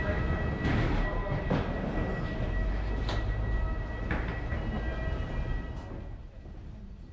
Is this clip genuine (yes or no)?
yes